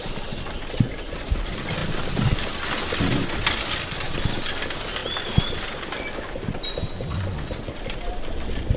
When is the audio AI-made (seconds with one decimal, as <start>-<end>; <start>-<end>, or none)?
none